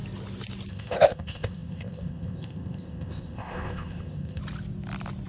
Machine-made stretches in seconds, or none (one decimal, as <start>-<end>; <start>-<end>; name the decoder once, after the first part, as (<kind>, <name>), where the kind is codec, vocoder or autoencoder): 0.7-4.4 (codec, ZipCodec)